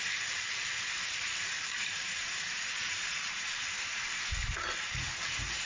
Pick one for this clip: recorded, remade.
remade